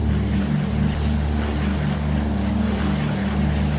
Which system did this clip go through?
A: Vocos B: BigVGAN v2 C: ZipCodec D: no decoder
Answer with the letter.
D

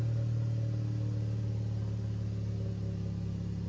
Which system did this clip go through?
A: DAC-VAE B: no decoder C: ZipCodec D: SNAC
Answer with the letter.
B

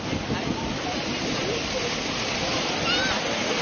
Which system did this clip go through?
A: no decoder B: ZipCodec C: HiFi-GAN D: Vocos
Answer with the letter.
A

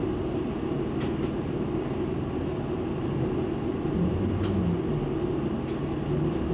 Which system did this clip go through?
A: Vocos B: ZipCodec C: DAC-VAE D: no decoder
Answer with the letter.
D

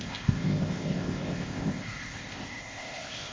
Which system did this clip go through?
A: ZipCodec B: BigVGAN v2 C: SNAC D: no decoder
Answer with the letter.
A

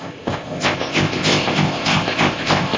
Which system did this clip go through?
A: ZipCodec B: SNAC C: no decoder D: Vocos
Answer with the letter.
A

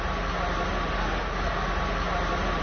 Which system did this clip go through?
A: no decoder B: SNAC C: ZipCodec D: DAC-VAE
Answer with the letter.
A